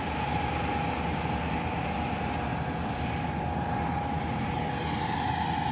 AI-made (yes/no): no